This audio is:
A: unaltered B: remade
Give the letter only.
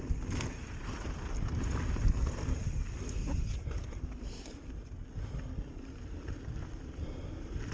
A